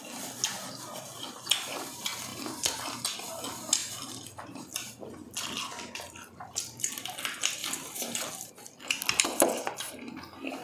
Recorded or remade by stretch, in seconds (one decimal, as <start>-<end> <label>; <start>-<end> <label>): 0.0-3.8 recorded; 3.8-6.9 remade; 6.9-10.6 recorded